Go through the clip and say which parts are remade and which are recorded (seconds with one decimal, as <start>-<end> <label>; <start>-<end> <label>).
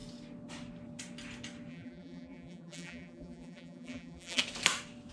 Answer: 0.0-1.7 recorded; 1.7-4.4 remade; 4.4-5.1 recorded